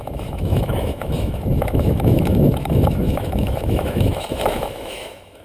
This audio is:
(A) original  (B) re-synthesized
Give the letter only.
B